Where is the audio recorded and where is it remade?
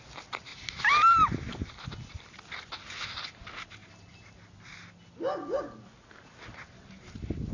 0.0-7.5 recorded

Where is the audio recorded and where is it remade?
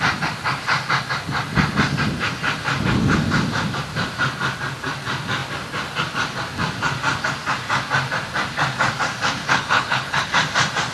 0.0-9.4 recorded; 9.4-10.3 remade; 10.3-10.9 recorded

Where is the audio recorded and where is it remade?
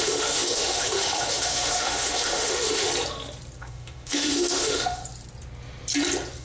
0.0-2.9 remade; 2.9-3.6 recorded; 3.6-5.0 remade; 5.0-6.4 recorded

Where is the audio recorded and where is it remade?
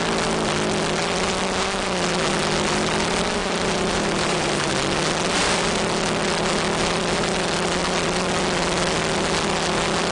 0.0-3.4 recorded; 3.4-4.7 remade; 4.7-10.1 recorded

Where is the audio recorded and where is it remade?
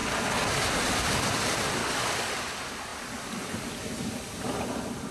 0.0-1.8 recorded; 1.8-2.3 remade; 2.3-5.1 recorded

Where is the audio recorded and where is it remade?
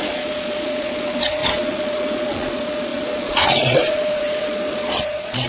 0.0-5.5 remade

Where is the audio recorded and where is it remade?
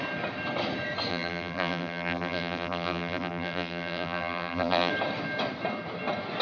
0.0-1.1 recorded; 1.1-4.9 remade; 4.9-6.4 recorded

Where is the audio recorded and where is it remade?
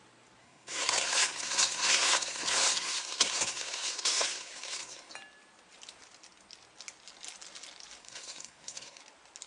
0.0-0.4 recorded; 0.4-5.1 remade; 5.1-8.0 recorded; 8.0-9.0 remade; 9.0-9.5 recorded